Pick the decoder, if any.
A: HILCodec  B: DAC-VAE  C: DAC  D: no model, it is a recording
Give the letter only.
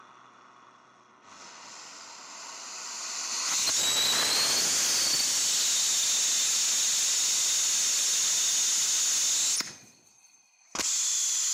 D